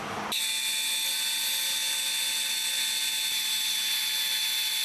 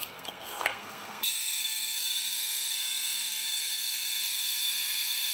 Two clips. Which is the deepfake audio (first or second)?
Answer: second